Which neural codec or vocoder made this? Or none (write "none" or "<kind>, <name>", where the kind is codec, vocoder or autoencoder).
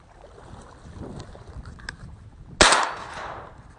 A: none